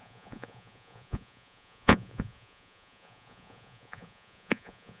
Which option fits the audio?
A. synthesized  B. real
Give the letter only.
A